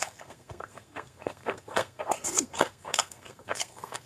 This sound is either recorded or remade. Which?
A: remade